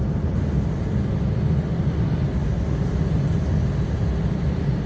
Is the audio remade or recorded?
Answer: recorded